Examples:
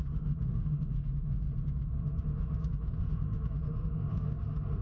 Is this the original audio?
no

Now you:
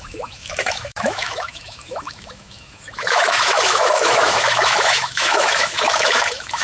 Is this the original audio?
no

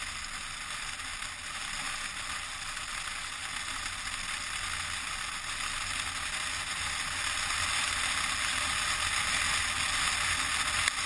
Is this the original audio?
yes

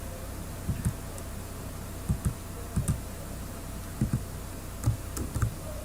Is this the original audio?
yes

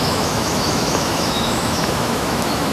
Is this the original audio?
no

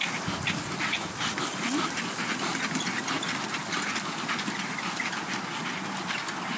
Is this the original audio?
yes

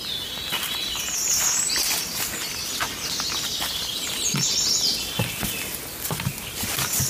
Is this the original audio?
yes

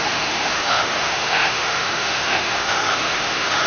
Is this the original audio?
no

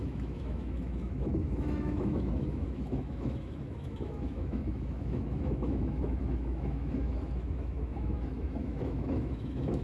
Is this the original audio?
no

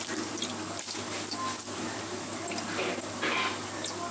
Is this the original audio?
yes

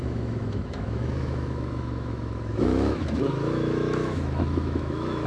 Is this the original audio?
no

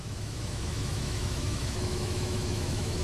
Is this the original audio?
no